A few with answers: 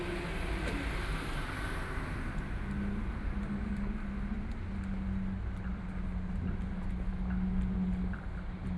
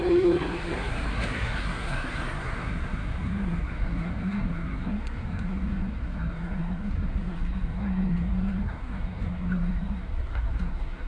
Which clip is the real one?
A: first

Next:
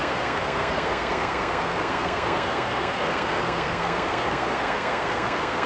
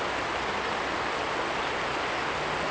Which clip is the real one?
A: second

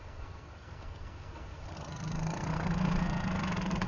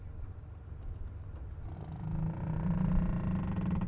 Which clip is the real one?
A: second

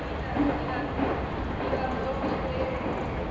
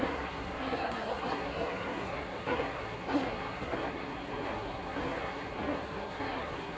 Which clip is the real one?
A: first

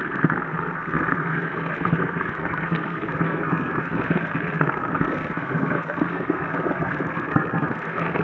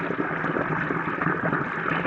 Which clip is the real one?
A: second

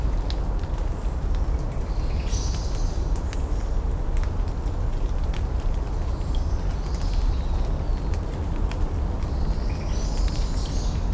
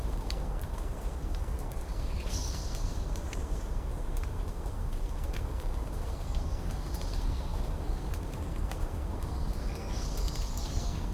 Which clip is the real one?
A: first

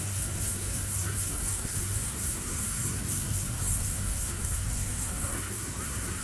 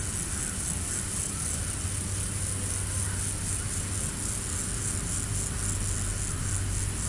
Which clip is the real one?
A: second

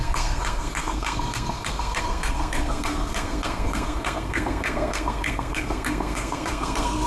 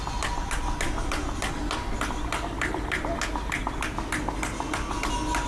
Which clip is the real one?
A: second